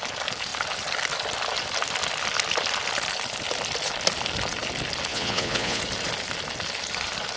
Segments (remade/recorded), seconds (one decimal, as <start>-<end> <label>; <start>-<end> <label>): 0.0-5.1 recorded; 5.1-5.8 remade; 5.8-7.4 recorded